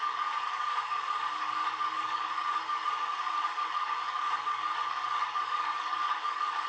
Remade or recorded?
remade